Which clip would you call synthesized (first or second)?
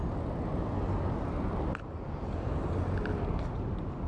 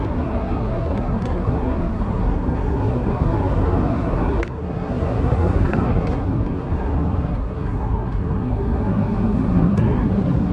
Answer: second